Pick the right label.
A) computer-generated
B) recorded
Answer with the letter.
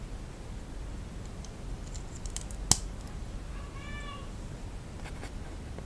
B